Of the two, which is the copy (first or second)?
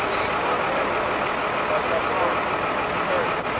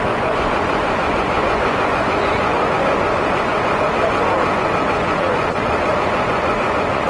second